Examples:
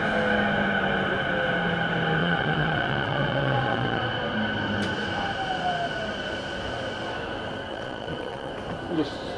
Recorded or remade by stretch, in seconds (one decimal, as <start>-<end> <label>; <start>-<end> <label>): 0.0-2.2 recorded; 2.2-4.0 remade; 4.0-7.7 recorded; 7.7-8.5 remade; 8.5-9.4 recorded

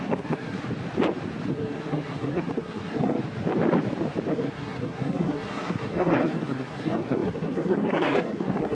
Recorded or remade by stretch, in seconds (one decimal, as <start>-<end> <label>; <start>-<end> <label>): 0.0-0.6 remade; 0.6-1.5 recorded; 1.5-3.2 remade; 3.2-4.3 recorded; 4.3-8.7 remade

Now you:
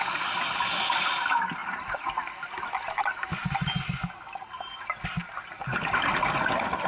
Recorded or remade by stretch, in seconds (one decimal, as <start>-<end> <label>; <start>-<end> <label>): 0.0-6.9 recorded

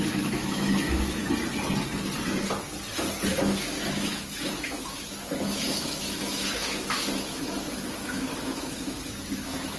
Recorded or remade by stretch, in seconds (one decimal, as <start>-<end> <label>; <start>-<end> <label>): 0.0-1.2 remade; 1.2-3.3 recorded; 3.3-9.8 remade

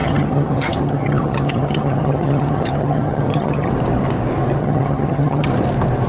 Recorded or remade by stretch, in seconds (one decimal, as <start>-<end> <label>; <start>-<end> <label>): 0.0-3.7 remade; 3.7-4.6 recorded; 4.6-5.5 remade; 5.5-6.1 recorded

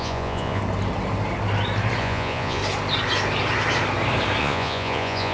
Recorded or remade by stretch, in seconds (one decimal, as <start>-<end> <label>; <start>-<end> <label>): 0.0-0.6 remade; 0.6-2.0 recorded; 2.0-2.6 remade; 2.6-4.4 recorded; 4.4-5.3 remade